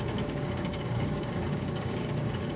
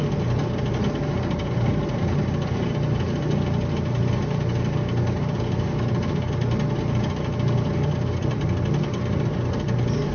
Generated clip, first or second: first